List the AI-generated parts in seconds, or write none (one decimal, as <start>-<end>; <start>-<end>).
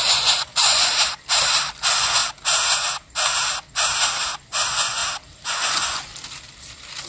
0.0-0.9; 1.8-2.2; 4.5-5.0; 5.5-6.1